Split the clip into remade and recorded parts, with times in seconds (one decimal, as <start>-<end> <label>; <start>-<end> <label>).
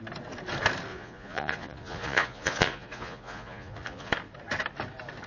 0.0-0.9 recorded; 0.9-4.1 remade; 4.1-5.3 recorded